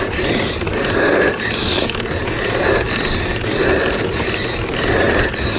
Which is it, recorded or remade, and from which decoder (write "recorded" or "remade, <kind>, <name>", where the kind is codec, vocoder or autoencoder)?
recorded